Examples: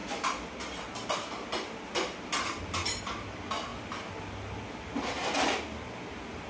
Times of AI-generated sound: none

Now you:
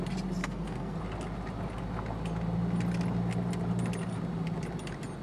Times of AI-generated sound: 0.4-1.0 (codec, SNAC)

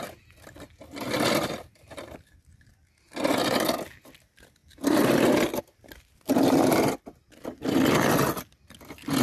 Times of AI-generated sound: none

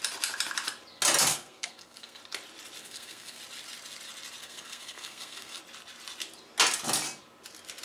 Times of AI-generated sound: 1.3-2.2 (codec, SNAC); 2.8-3.4; 4.4-5.6

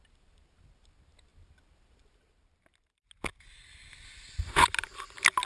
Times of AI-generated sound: none

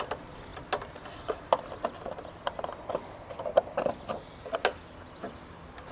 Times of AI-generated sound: none

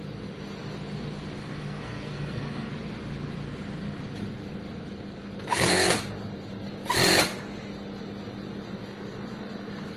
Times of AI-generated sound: 1.4-2.7 (codec, SNAC); 5.5-6.0

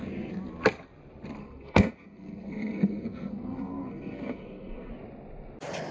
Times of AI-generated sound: 1.4-4.9 (codec, SNAC)